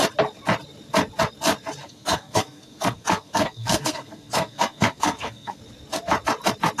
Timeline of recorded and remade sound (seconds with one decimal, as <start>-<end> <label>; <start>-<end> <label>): 0.0-1.8 recorded; 1.8-5.6 remade; 5.6-6.8 recorded